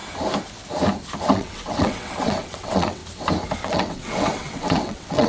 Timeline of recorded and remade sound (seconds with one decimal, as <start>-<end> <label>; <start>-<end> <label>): 0.0-1.2 recorded; 1.2-3.0 remade; 3.0-3.6 recorded; 3.6-5.3 remade